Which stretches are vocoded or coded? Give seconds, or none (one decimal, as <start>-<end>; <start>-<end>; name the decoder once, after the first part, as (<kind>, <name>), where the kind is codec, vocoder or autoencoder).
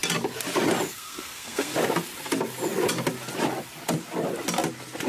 0.9-1.7 (codec, SNAC)